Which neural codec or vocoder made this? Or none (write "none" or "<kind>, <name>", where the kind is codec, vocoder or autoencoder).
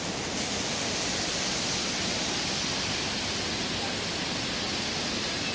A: none